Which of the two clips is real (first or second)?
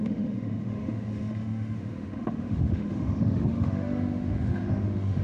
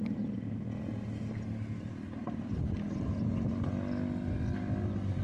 second